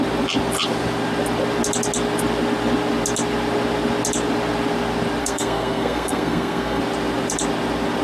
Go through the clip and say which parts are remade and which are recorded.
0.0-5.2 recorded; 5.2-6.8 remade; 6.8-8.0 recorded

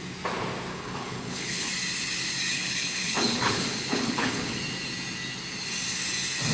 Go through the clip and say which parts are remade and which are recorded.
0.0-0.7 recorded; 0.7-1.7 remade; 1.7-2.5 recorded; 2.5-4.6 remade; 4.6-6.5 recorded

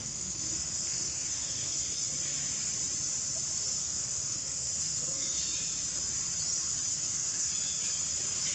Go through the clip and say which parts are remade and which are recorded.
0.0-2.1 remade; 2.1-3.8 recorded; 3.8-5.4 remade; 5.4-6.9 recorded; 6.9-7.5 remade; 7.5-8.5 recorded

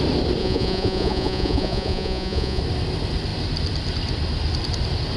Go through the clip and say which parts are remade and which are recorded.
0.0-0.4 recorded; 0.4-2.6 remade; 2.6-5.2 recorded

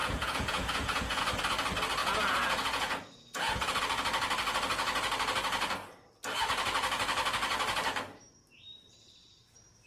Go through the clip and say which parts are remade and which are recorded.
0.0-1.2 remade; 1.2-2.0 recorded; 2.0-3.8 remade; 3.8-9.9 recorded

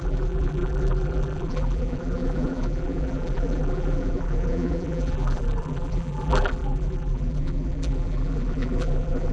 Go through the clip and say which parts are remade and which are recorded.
0.0-9.3 remade

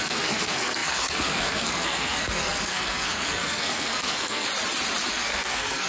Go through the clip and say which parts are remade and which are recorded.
0.0-4.5 remade; 4.5-5.1 recorded; 5.1-5.9 remade